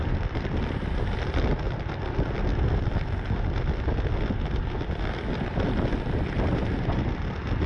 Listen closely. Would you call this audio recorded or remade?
recorded